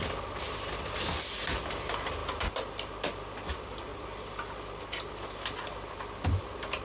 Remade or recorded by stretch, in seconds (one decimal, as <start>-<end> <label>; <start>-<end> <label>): 0.0-6.8 recorded